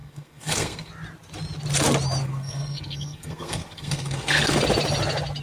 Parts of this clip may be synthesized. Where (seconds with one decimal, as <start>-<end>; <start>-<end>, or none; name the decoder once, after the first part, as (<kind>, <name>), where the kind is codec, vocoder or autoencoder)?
0.0-0.9 (codec, SNAC); 2.2-4.6